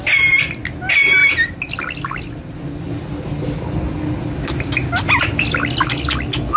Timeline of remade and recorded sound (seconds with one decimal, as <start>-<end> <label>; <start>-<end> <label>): 0.0-6.6 recorded

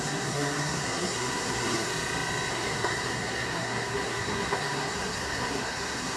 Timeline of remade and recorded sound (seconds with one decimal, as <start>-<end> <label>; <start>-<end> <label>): 0.0-1.9 remade; 1.9-2.5 recorded; 2.5-6.2 remade

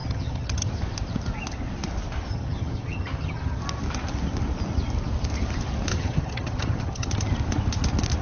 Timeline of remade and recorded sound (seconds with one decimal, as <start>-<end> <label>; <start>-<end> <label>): 0.0-0.7 remade; 0.7-2.3 recorded; 2.3-3.6 remade; 3.6-5.9 recorded; 5.9-7.1 remade; 7.1-8.2 recorded

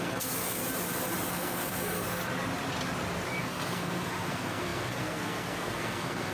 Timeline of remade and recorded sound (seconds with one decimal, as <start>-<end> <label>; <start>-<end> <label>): 0.0-0.6 remade; 0.6-1.3 recorded; 1.3-2.0 remade; 2.0-3.4 recorded; 3.4-6.3 remade

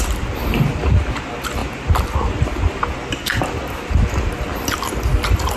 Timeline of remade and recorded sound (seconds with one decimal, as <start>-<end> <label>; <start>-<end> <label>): 0.0-5.6 recorded

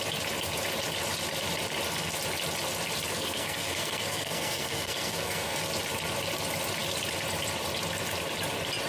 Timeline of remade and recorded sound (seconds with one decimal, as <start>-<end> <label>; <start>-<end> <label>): 0.0-3.1 recorded; 3.1-5.6 remade; 5.6-8.9 recorded